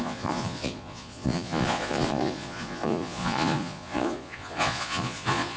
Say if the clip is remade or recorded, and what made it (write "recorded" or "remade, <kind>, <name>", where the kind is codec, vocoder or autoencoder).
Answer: remade, vocoder, Vocos